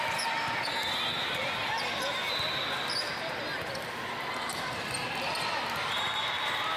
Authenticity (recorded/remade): recorded